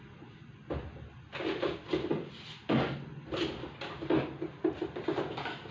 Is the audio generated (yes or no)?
no